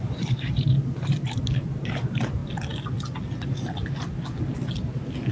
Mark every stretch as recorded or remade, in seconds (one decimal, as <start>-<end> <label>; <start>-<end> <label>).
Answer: 0.0-2.4 remade; 2.4-5.3 recorded